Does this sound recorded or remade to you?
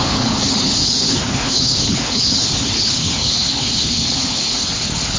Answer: remade